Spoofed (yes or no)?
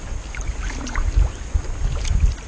no